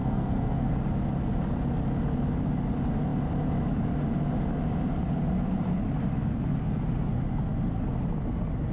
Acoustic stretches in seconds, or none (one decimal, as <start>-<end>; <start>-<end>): 0.7-8.7